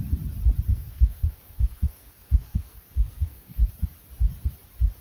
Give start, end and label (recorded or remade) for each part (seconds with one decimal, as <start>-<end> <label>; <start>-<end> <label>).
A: 0.0-0.7 recorded; 0.7-3.7 remade; 3.7-5.0 recorded